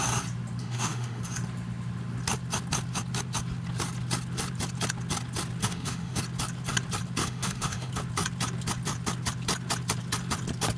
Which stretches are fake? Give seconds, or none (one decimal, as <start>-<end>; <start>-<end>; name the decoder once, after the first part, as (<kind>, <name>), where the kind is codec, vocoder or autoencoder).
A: 0.6-1.2 (autoencoder, DAC-VAE); 5.6-6.2; 7.2-7.9